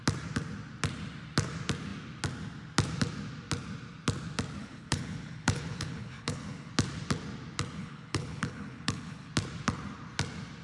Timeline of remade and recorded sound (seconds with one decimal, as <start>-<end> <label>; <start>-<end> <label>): 0.0-4.6 recorded; 4.6-6.7 remade; 6.7-7.8 recorded; 7.8-9.3 remade; 9.3-10.6 recorded